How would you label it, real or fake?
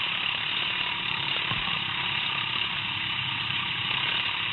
fake